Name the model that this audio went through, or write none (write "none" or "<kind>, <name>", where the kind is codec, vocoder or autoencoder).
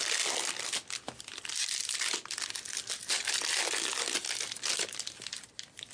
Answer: none